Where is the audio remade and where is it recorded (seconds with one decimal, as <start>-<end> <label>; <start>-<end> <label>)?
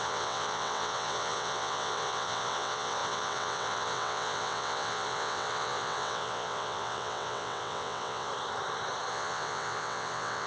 0.0-8.3 remade; 8.3-9.1 recorded; 9.1-10.5 remade